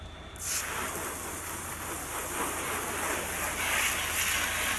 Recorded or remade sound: recorded